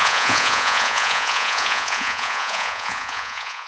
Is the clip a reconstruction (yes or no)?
yes